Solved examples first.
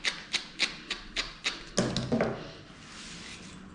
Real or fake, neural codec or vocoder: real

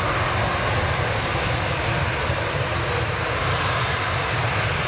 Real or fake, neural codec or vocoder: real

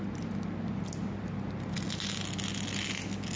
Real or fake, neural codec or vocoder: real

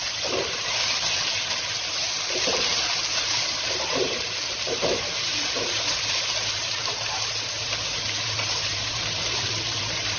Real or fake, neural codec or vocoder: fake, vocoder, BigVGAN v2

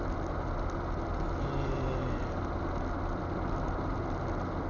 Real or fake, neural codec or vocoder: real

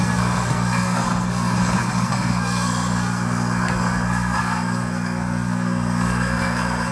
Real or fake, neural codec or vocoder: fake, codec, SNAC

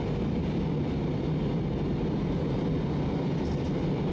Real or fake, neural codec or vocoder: real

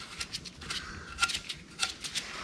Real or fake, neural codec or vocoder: real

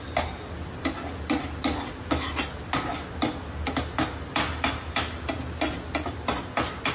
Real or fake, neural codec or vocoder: real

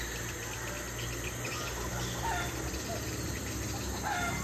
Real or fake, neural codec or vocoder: real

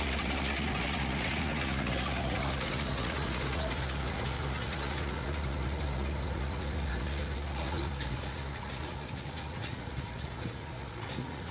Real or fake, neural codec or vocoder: fake, vocoder, Vocos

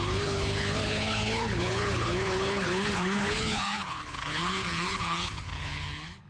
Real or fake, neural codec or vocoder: fake, codec, HILCodec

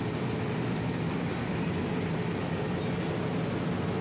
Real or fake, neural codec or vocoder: real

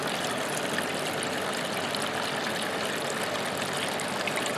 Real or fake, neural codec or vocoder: real